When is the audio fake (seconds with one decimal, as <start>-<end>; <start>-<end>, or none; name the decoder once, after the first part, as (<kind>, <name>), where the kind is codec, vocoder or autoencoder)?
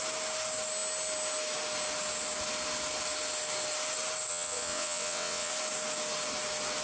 4.3-5.5 (vocoder, WaveNeXt)